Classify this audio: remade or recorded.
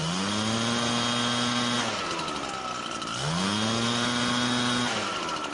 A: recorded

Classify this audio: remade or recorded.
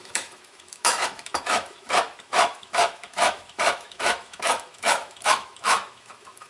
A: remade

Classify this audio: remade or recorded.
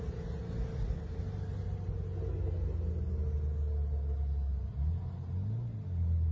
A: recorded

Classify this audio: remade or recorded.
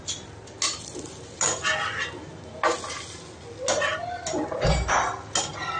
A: recorded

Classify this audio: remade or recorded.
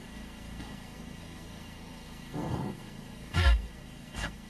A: remade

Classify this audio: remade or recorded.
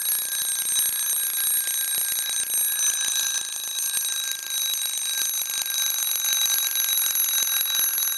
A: recorded